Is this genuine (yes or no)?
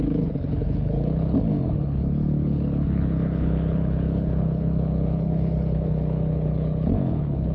no